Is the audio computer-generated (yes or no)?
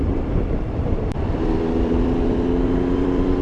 yes